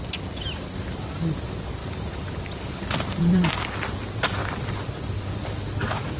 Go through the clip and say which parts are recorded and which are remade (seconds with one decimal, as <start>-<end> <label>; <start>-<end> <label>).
0.0-1.8 recorded; 1.8-3.7 remade; 3.7-4.4 recorded; 4.4-5.6 remade; 5.6-6.2 recorded